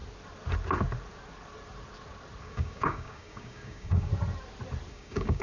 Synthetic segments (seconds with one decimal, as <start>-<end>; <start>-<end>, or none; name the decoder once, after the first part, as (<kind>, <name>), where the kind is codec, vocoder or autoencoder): 2.4-4.1 (codec, DAC); 4.9-5.4